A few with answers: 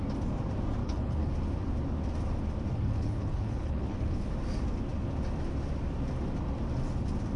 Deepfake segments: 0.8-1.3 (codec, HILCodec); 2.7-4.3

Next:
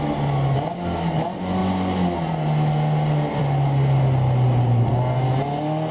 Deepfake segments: none

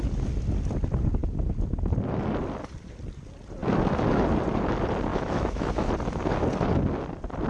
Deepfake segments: 5.1-5.9 (autoencoder, DAC-VAE)